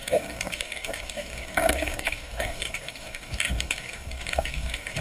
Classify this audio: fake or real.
fake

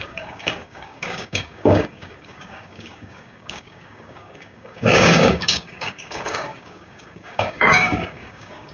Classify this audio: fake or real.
fake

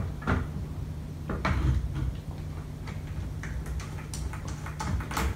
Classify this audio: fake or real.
real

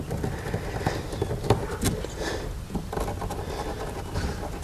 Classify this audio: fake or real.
real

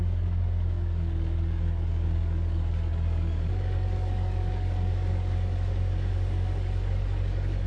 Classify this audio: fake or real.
fake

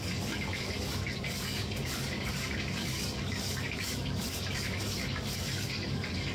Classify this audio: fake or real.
fake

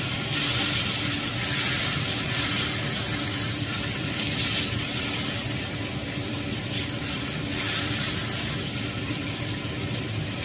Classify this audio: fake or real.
real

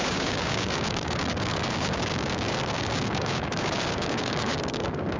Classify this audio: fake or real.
fake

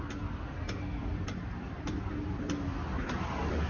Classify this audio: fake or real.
real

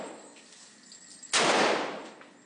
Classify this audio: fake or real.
real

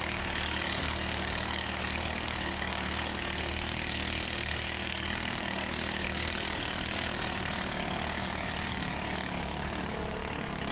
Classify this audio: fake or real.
fake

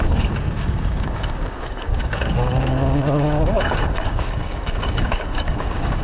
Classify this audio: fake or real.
fake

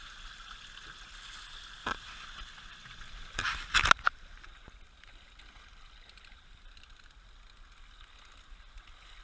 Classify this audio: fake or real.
real